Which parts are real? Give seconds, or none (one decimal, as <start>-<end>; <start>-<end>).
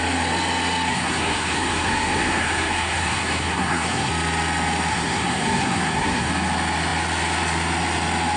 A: 0.0-0.9; 4.1-4.9; 6.3-8.4